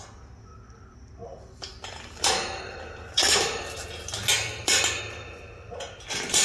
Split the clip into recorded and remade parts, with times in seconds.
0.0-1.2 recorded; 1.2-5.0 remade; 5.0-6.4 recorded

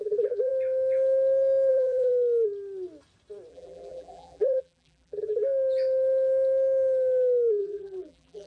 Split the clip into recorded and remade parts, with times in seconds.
0.0-0.5 remade; 0.5-1.7 recorded; 1.7-2.1 remade; 2.1-3.5 recorded; 3.5-5.3 remade; 5.3-7.6 recorded; 7.6-8.5 remade

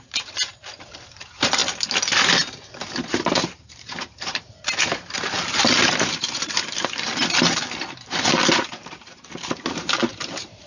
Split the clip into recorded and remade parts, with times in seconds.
0.0-1.6 remade; 1.6-2.3 recorded; 2.3-10.7 remade

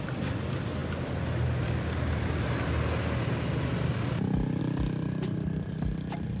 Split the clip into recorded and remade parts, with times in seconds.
0.0-6.4 recorded

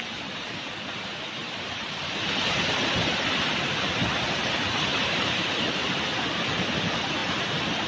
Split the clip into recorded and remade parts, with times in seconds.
0.0-1.4 recorded; 1.4-3.6 remade; 3.6-4.9 recorded; 4.9-5.9 remade; 5.9-7.9 recorded